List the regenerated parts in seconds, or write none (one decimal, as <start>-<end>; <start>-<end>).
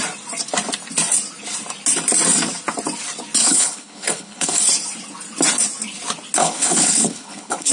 3.4-4.6; 6.4-7.7